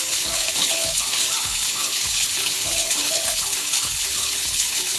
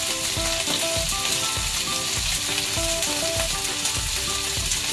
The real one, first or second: second